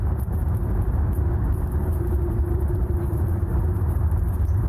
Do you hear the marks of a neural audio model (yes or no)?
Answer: yes